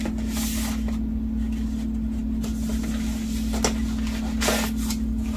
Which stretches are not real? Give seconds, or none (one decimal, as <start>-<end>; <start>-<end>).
none